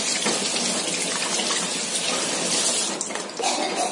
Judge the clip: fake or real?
real